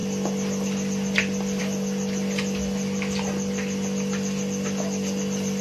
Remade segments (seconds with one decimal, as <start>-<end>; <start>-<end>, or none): none